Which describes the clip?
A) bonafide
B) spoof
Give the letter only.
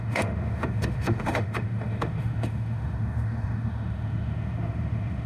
B